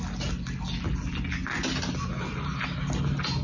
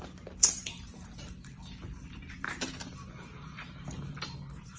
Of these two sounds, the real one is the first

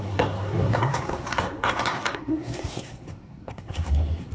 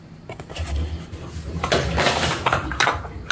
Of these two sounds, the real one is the second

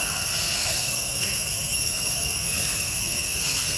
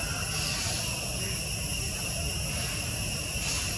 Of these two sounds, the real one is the second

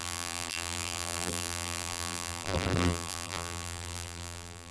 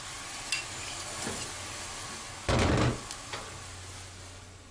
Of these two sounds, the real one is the second